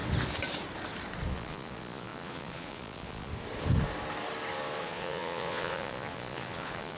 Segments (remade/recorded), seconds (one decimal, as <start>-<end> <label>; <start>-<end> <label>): 0.0-1.3 recorded; 1.3-3.3 remade; 3.3-4.8 recorded; 4.8-7.0 remade